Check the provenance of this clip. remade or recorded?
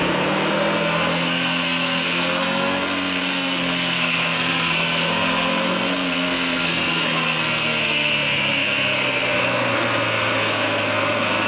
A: remade